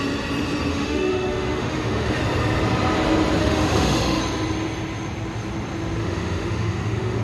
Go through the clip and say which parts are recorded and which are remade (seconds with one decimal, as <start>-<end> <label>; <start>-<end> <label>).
0.0-0.7 recorded; 0.7-2.2 remade; 2.2-3.4 recorded; 3.4-4.2 remade; 4.2-6.0 recorded; 6.0-7.2 remade